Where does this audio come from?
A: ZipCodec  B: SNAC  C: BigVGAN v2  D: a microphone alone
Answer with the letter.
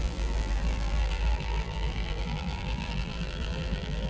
C